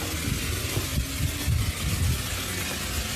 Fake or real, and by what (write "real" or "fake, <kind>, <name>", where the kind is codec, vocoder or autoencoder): real